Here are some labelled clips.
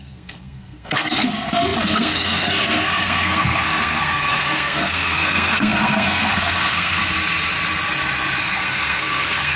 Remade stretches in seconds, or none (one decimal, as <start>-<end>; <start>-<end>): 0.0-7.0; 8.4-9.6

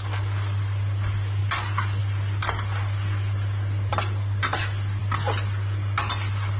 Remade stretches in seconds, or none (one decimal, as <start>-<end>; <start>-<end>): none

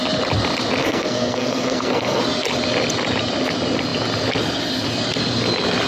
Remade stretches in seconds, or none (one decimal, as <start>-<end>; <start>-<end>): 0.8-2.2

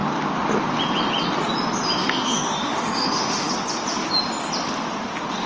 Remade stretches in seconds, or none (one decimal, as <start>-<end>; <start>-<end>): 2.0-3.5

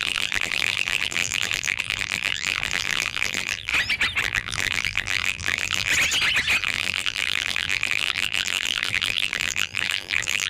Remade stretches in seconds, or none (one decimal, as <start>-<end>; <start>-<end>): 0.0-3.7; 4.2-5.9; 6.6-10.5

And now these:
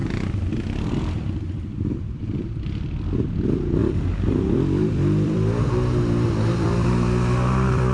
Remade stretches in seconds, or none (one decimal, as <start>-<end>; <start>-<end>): 0.5-7.9